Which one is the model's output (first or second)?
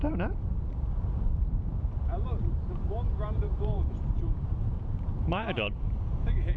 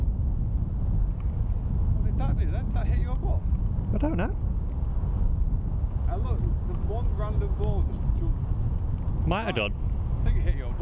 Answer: first